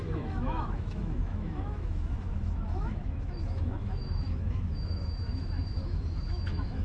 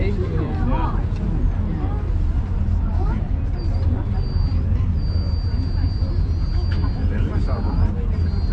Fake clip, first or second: first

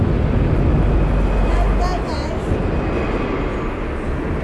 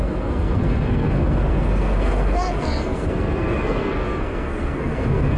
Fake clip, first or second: second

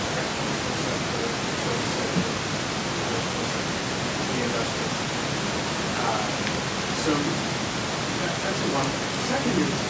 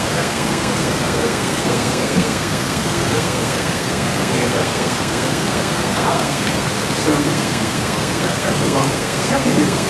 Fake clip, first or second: second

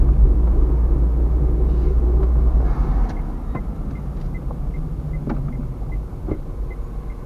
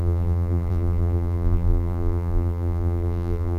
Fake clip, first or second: second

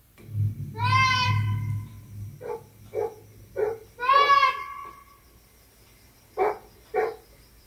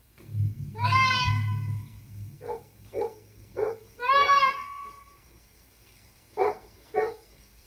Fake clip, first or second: second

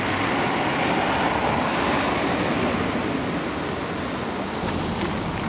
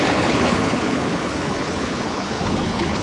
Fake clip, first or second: second